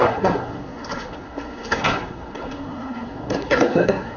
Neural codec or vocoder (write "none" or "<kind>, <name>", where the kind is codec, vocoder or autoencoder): codec, SNAC